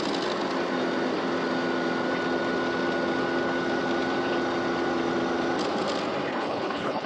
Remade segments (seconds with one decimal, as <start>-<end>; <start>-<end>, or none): 6.3-7.1